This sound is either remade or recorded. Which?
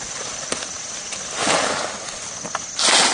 recorded